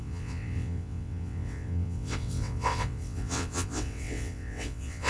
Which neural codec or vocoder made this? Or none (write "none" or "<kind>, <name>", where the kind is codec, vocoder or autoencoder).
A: vocoder, WaveNeXt